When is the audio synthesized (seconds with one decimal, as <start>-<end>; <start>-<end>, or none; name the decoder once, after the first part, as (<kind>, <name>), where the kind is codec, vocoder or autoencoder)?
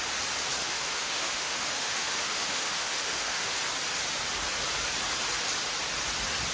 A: 0.6-3.6 (autoencoder, DAC-VAE)